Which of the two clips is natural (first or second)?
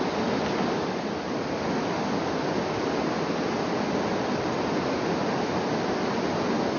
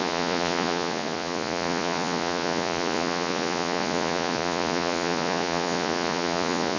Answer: first